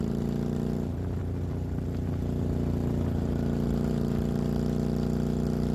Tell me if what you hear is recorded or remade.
recorded